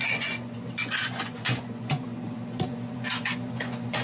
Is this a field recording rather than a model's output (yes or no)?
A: no